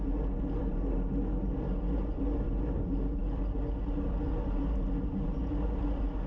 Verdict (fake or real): real